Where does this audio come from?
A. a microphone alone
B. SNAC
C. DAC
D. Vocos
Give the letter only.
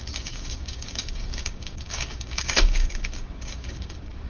C